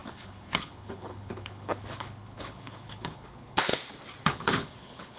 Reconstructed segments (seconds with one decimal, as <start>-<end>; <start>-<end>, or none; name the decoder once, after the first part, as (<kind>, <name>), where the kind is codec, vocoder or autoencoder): 0.0-3.7 (codec, HILCodec); 4.3-5.2